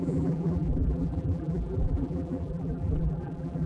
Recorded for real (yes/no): no